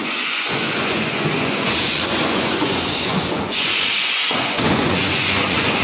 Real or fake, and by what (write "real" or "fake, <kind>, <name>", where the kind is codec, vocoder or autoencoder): fake, vocoder, Vocos